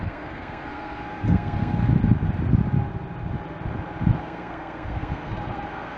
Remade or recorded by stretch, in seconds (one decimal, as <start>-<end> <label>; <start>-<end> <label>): 0.0-1.8 remade; 1.8-4.2 recorded; 4.2-6.0 remade